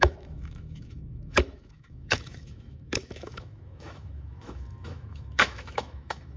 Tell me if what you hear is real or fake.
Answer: fake